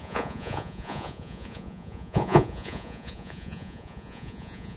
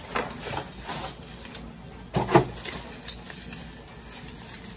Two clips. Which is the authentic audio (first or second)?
second